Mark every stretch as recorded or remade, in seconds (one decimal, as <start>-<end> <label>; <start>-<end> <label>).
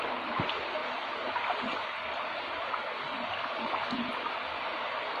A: 0.0-5.2 recorded